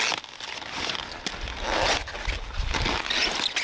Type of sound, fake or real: real